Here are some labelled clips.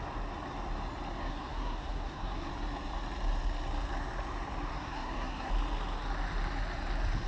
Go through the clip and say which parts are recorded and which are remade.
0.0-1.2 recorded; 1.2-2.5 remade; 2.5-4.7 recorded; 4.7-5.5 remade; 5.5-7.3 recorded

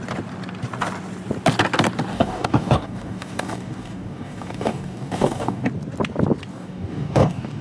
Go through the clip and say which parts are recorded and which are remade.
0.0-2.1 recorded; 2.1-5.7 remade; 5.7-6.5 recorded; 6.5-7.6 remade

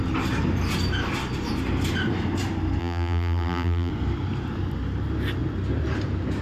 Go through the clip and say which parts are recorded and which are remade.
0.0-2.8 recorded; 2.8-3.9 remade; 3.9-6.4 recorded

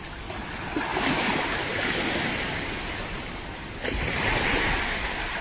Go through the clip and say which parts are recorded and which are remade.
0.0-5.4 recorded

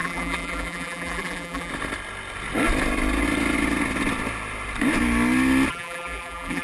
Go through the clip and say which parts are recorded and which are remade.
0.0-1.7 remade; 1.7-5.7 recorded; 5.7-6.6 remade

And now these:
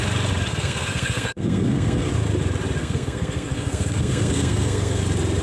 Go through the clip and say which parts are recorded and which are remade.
0.0-0.5 recorded; 0.5-2.1 remade; 2.1-2.8 recorded; 2.8-5.0 remade; 5.0-5.4 recorded

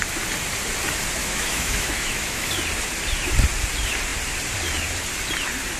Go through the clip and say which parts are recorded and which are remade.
0.0-1.2 recorded; 1.2-2.5 remade; 2.5-5.8 recorded